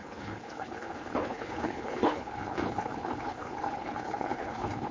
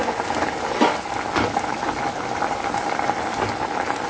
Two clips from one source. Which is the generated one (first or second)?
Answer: first